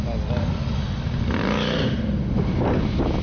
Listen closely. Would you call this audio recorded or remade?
recorded